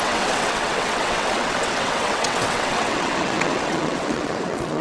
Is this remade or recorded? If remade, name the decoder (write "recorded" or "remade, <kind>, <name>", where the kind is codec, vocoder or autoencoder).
remade, vocoder, WaveNeXt